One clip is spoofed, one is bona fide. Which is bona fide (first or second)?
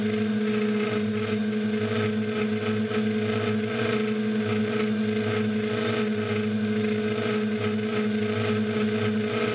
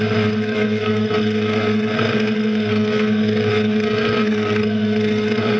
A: first